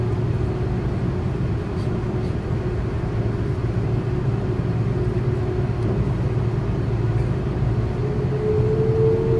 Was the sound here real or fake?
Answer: real